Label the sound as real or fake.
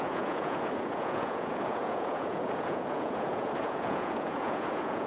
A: fake